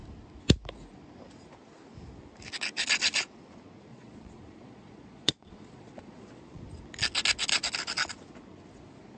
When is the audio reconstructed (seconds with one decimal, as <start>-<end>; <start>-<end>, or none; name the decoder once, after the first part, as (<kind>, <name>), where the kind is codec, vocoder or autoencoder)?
3.9-6.6 (vocoder, Vocos)